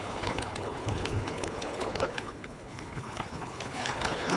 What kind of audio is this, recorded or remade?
remade